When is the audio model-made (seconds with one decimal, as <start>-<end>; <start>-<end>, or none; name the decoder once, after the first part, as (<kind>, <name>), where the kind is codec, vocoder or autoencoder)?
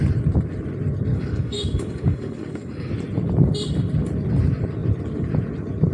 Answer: 1.1-2.9 (codec, DAC)